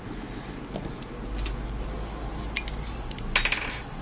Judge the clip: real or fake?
real